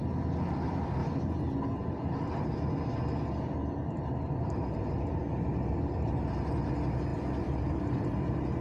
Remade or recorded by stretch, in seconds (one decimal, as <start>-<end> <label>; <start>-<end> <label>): 0.0-7.1 recorded; 7.1-8.6 remade